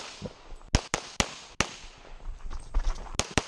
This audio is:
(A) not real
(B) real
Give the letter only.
B